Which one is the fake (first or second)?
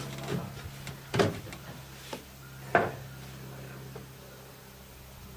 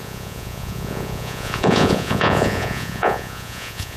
second